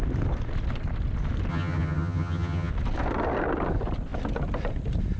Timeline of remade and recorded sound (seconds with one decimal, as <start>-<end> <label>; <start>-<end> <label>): 0.0-1.5 recorded; 1.5-2.7 remade; 2.7-5.2 recorded